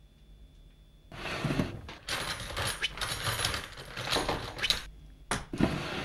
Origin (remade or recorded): recorded